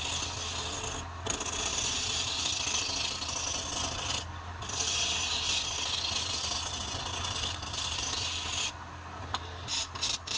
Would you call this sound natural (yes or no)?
yes